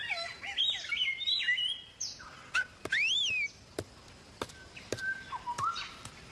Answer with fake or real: real